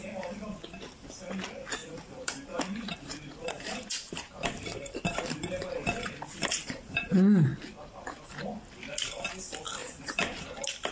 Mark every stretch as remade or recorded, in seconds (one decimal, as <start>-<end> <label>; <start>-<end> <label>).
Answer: 0.0-1.8 recorded; 1.8-7.1 remade; 7.1-9.8 recorded; 9.8-10.5 remade; 10.5-10.9 recorded